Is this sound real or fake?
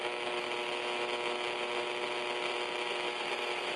real